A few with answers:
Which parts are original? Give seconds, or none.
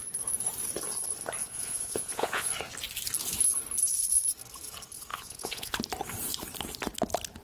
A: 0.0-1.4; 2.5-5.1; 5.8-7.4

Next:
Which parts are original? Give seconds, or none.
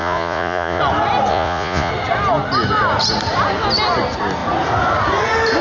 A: 0.8-1.3; 1.9-5.6